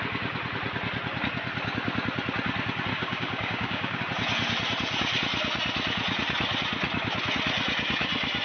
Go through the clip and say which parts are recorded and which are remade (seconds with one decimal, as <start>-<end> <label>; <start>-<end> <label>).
0.0-2.9 recorded; 2.9-4.0 remade; 4.0-8.4 recorded